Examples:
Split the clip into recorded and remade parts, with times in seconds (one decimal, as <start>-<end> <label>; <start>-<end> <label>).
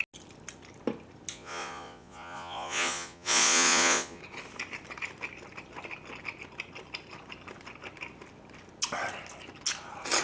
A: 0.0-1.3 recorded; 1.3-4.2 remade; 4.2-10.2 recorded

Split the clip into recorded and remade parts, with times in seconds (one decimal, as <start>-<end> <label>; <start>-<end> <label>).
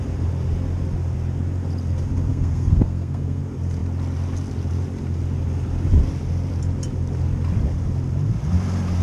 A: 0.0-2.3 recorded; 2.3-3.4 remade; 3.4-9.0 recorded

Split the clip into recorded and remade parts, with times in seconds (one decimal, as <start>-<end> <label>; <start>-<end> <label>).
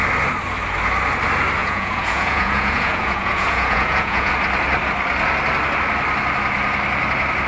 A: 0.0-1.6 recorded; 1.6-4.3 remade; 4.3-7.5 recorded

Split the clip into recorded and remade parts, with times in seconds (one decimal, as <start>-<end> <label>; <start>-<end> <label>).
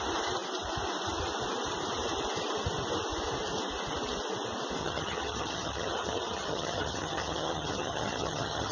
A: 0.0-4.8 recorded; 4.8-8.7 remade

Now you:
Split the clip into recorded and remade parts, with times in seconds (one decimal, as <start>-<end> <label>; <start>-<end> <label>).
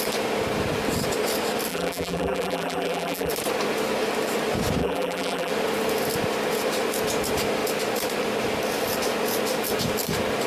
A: 0.0-1.7 recorded; 1.7-3.3 remade; 3.3-4.8 recorded; 4.8-5.5 remade; 5.5-10.5 recorded